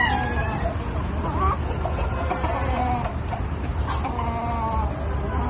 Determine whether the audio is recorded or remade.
recorded